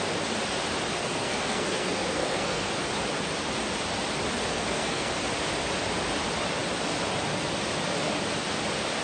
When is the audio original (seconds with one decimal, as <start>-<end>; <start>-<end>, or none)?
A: 0.0-1.0; 2.7-4.5; 5.1-9.0